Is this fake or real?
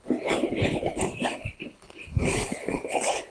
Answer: fake